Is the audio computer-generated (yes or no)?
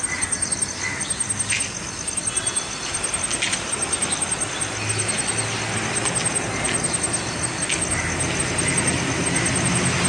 no